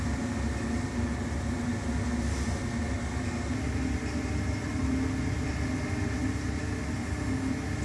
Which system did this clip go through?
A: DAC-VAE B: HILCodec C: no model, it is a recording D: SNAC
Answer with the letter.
C